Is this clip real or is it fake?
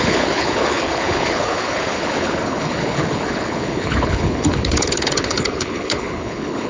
fake